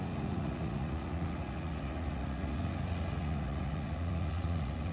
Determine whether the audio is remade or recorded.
remade